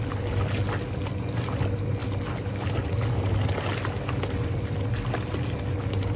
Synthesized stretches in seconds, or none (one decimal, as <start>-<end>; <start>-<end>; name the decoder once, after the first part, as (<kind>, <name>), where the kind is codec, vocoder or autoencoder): none